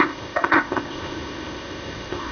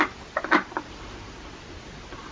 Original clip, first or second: second